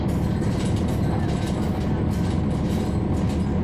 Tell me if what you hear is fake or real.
real